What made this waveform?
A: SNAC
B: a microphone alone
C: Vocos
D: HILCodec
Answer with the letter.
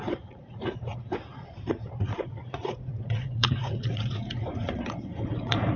C